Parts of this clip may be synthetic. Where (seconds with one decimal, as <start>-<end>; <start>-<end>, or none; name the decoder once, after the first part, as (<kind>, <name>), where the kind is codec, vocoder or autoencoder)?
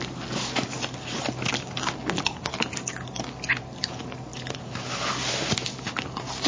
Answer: 4.3-5.5 (vocoder, BigVGAN v2)